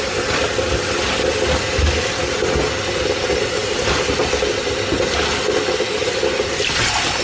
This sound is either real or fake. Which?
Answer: real